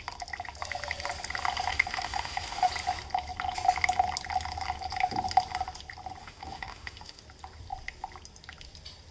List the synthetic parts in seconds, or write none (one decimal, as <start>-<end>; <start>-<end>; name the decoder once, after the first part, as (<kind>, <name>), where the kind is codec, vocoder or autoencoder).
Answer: 1.7-2.7 (autoencoder, DAC-VAE); 6.2-7.2